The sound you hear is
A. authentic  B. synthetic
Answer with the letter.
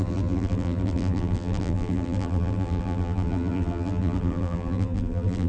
B